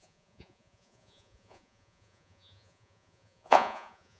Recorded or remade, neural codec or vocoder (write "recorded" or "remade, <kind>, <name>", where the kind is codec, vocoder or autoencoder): remade, vocoder, Vocos